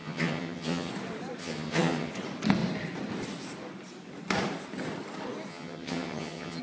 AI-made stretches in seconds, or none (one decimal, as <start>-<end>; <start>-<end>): 0.0-0.9; 1.4-2.1; 5.5-6.6